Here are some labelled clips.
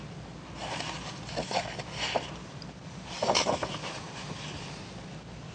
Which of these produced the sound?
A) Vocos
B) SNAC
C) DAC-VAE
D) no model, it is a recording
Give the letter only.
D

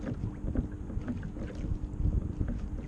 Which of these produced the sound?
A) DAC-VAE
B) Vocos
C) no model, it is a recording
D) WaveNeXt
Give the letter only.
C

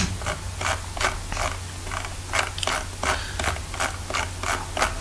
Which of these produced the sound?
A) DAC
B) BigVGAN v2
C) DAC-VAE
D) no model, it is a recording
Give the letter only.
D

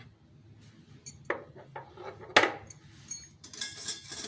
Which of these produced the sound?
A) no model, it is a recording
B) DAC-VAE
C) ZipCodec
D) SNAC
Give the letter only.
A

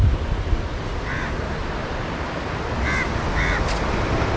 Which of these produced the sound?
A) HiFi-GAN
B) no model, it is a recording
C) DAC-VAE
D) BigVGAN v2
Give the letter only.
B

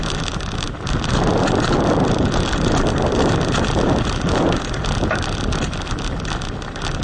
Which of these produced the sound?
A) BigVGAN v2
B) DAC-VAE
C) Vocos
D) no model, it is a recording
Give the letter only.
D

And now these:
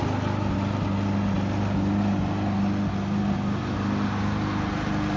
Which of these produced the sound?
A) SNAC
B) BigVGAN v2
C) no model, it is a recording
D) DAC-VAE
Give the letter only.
C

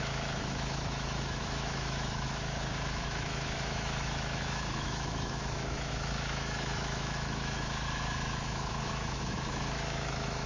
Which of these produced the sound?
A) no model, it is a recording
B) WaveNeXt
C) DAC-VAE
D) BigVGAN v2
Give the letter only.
C